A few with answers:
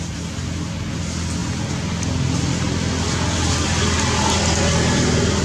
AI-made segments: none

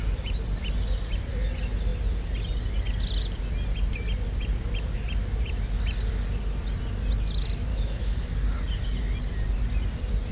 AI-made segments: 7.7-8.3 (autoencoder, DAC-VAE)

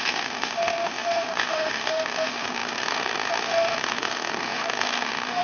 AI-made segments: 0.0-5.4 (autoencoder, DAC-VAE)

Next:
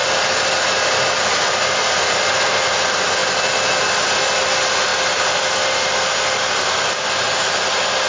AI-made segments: none

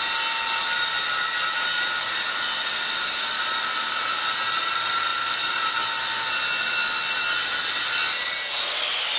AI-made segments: 0.6-2.1 (vocoder, BigVGAN v2)

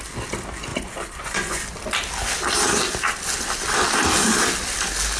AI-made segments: 0.7-1.6 (vocoder, Vocos)

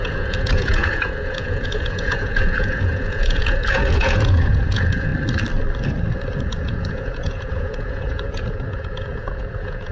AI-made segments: 0.0-5.1 (vocoder, Vocos); 6.4-9.9

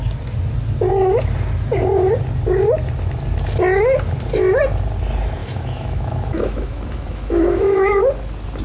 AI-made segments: 5.4-8.0 (autoencoder, DAC-VAE)